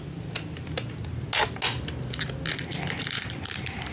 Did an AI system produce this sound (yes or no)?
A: no